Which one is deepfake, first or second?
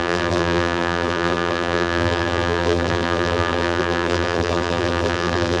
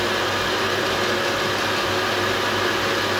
first